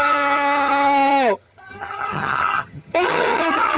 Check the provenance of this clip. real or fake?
fake